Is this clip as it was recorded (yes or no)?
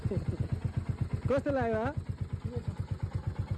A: yes